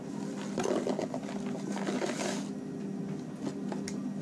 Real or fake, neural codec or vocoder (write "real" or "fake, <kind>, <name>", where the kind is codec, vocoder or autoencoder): real